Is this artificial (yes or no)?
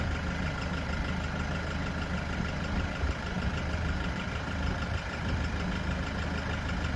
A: no